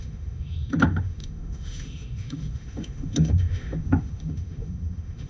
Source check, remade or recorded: remade